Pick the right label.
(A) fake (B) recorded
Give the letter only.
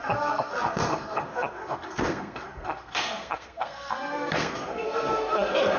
A